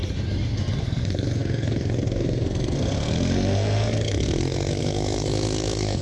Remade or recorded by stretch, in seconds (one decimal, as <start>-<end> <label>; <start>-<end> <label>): 0.0-0.8 recorded; 0.8-6.0 remade